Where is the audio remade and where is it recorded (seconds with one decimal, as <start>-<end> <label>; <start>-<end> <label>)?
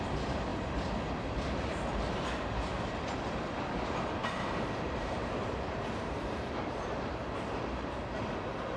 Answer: 0.0-4.2 recorded; 4.2-8.2 remade; 8.2-8.8 recorded